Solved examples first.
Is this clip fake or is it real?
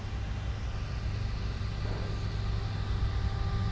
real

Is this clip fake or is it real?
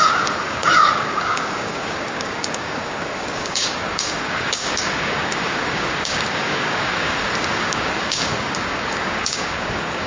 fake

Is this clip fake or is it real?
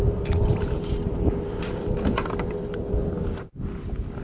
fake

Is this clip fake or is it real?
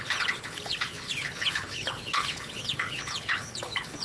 fake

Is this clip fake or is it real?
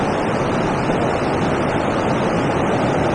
fake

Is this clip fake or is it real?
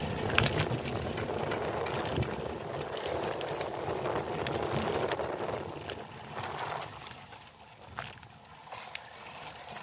real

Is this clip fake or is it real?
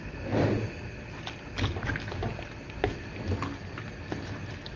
real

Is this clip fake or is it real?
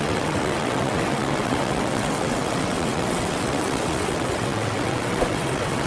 fake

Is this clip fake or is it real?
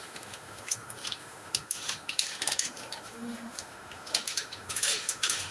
fake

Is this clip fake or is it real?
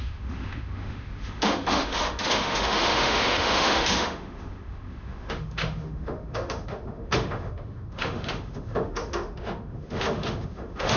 fake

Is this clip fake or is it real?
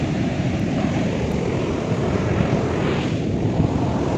fake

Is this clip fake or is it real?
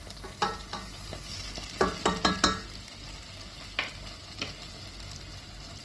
real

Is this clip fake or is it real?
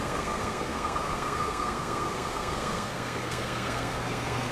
fake